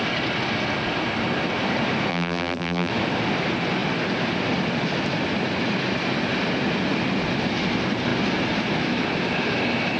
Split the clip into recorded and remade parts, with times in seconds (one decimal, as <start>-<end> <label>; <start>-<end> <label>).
0.0-2.1 recorded; 2.1-2.9 remade; 2.9-10.0 recorded